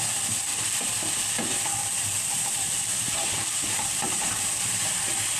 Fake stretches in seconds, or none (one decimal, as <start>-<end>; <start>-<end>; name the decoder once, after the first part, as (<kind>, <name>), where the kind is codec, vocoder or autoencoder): 0.5-1.2 (vocoder, BigVGAN v2); 1.8-5.0